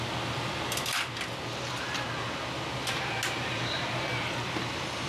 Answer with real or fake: real